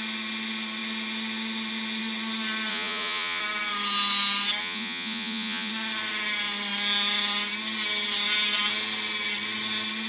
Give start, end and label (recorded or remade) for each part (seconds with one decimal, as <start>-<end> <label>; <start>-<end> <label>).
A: 0.0-2.7 recorded; 2.7-3.4 remade; 3.4-4.6 recorded; 4.6-5.7 remade; 5.7-10.1 recorded